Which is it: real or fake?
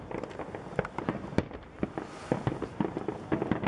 real